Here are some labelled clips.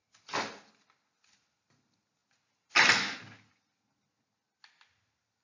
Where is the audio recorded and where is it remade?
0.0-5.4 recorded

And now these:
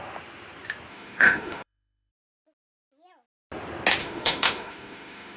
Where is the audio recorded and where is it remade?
0.0-0.9 recorded; 0.9-2.1 remade; 2.1-4.0 recorded; 4.0-5.4 remade

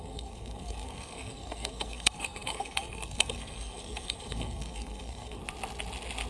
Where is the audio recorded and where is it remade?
0.0-5.4 remade; 5.4-6.3 recorded